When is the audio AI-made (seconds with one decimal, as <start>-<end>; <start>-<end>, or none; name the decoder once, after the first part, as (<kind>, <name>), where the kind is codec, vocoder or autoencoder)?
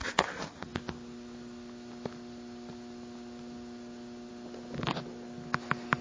none